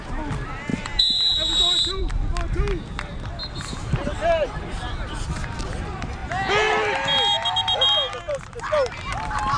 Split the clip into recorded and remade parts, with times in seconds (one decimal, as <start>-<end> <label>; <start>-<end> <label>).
0.0-0.7 recorded; 0.7-2.1 remade; 2.1-9.6 recorded